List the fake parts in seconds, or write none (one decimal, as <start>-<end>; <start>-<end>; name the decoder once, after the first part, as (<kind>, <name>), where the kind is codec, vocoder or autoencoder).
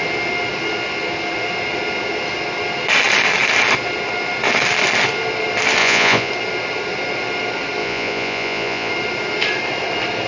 5.8-6.3 (vocoder, Vocos); 7.8-8.9